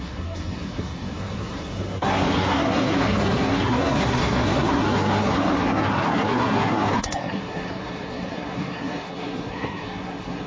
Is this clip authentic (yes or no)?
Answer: no